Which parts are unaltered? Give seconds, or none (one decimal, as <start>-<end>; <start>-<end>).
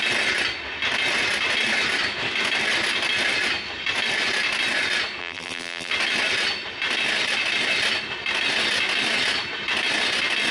0.0-5.2; 5.9-10.5